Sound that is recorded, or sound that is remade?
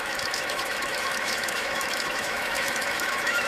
remade